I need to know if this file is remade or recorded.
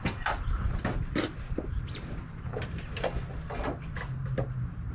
recorded